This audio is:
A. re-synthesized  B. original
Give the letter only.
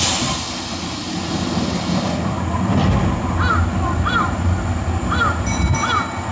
B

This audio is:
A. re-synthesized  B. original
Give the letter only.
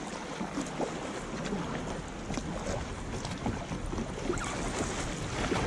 B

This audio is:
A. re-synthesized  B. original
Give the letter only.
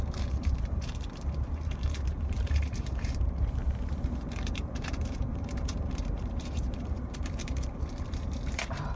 A